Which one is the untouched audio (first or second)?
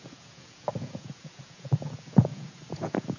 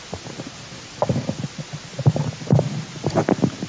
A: second